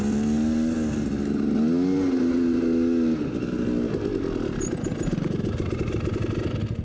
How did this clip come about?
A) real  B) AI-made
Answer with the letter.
A